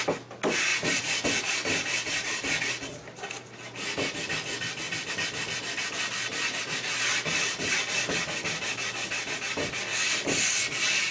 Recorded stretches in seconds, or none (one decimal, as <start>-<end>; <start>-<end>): 0.0-11.1